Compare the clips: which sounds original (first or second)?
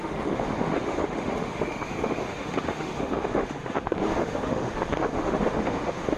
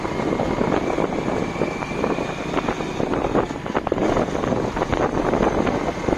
second